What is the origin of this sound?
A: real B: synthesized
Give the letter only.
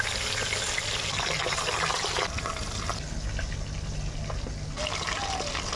A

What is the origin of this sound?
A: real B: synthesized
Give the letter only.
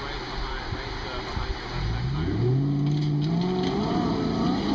A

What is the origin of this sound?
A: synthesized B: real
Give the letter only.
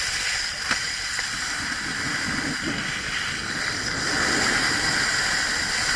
B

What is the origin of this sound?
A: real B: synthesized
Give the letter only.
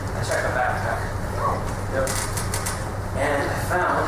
A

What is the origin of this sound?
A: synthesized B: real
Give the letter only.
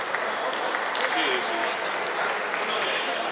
B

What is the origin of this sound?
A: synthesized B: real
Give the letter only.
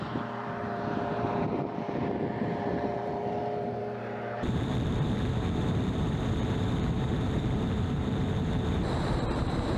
A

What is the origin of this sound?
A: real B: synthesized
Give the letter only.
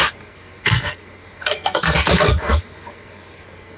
B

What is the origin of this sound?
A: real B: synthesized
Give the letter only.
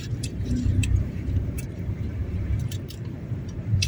B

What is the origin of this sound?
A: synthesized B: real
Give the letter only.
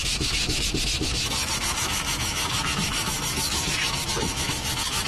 A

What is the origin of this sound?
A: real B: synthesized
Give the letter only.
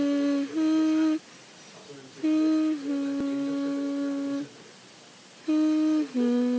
A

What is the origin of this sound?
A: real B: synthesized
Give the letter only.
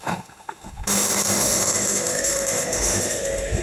B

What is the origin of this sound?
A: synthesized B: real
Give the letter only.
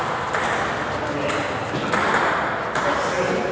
B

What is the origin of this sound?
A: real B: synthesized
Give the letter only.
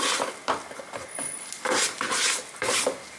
A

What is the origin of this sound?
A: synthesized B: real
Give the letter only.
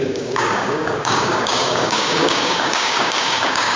A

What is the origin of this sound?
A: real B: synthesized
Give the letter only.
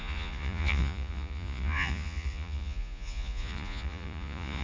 B